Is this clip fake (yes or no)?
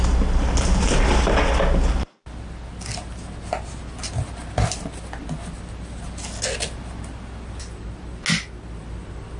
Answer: no